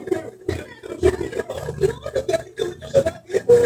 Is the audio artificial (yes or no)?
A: yes